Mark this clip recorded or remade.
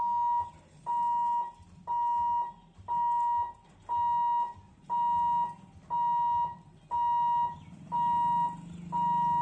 recorded